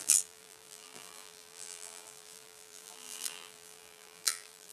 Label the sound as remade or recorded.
remade